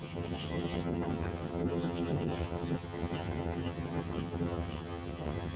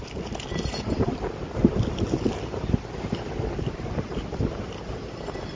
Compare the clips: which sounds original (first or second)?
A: second